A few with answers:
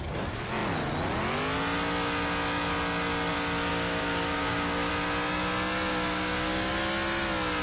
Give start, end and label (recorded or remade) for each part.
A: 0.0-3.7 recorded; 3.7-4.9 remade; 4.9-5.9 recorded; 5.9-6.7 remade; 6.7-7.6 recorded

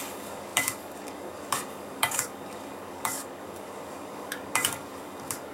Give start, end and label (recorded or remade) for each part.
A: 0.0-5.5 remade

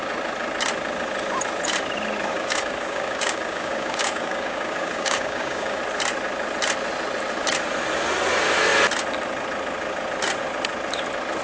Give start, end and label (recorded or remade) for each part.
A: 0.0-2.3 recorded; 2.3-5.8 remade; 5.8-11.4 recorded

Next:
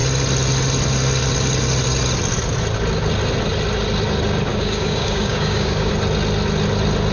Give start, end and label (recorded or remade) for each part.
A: 0.0-4.5 recorded; 4.5-5.9 remade; 5.9-7.1 recorded